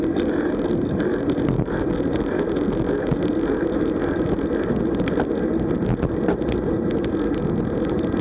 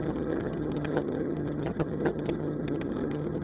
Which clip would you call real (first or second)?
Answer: first